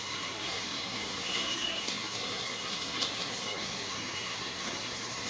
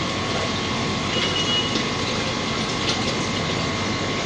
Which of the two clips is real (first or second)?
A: second